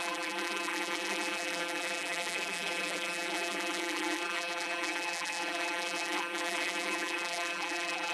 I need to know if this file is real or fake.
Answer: fake